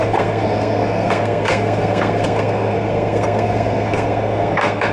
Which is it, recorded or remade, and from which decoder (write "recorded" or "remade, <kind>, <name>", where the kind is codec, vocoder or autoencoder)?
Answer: remade, codec, SNAC